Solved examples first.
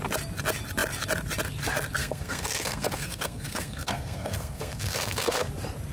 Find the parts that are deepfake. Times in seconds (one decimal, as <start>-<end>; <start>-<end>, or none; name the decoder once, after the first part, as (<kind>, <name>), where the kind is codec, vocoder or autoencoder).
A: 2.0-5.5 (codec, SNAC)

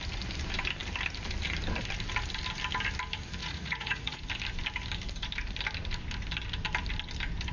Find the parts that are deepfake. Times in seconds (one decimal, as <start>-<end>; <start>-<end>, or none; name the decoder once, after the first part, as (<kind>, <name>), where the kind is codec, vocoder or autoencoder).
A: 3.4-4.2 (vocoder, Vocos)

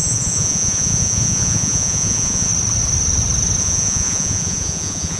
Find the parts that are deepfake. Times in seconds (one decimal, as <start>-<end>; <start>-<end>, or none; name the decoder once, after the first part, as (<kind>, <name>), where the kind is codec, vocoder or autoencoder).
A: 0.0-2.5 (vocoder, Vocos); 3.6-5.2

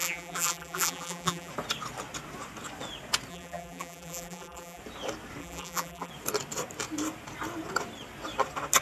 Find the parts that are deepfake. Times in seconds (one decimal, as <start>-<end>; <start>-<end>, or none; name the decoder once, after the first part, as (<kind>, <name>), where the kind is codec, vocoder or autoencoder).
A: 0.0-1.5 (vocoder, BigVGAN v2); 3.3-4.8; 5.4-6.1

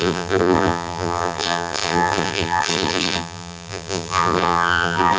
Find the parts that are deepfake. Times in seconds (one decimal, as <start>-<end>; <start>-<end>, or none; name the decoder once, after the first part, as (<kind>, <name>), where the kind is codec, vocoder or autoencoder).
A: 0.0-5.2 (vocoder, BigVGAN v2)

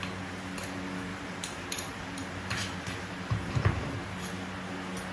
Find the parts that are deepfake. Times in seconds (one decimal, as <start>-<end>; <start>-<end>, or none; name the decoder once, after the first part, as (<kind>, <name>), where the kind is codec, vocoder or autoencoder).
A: 1.1-4.2 (vocoder, BigVGAN v2)